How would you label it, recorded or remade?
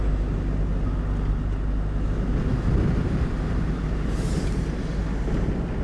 recorded